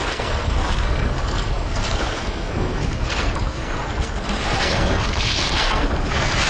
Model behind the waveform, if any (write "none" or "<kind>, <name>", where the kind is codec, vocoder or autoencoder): codec, SNAC